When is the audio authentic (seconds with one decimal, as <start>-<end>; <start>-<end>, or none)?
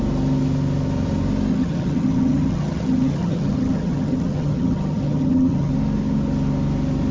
0.0-1.5; 5.7-7.1